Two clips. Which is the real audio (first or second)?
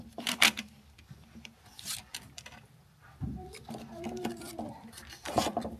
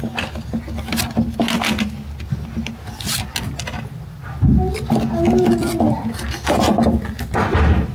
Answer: second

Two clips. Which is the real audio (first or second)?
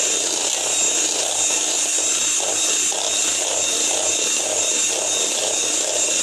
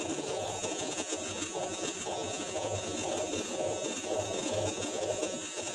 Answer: first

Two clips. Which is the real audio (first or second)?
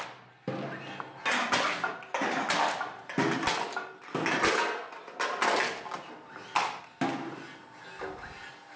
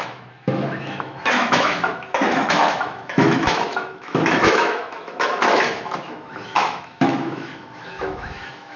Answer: first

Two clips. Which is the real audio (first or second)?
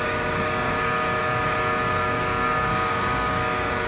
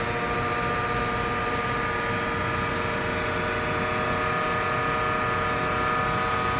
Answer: second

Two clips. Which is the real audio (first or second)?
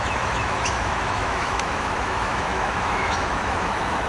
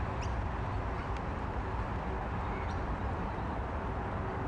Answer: second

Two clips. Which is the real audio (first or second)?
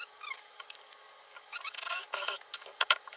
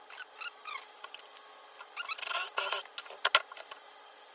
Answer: second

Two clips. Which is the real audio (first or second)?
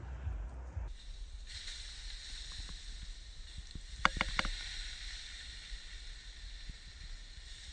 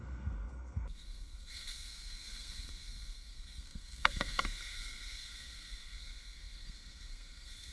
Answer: first